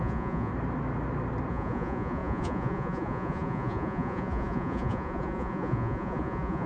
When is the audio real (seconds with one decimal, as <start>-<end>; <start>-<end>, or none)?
0.5-1.5